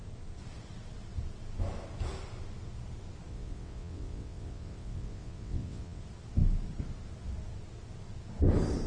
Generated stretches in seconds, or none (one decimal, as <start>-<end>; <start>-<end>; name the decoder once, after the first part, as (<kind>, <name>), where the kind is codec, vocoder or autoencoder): 3.3-6.0 (vocoder, WaveNeXt)